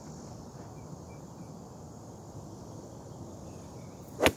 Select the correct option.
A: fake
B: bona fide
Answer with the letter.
A